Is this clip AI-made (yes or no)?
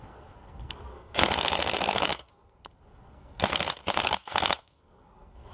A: yes